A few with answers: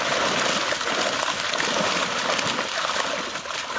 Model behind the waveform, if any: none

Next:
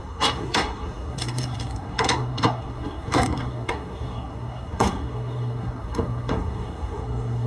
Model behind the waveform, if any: codec, SNAC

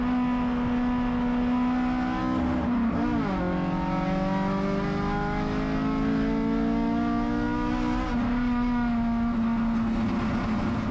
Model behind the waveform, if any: none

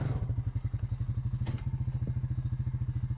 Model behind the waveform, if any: none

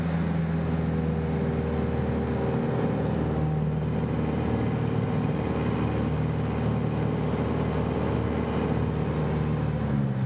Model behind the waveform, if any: none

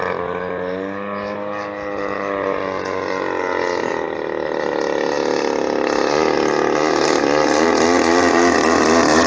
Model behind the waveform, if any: none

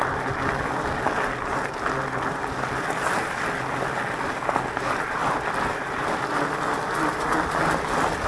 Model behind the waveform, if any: none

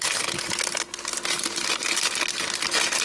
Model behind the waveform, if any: none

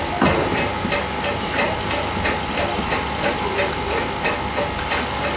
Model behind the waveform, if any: none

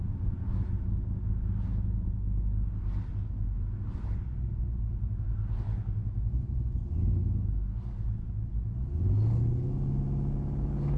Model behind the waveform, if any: none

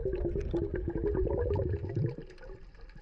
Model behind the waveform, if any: none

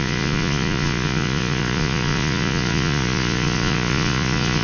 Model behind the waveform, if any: vocoder, Vocos